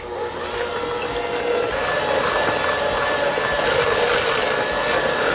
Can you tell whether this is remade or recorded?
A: recorded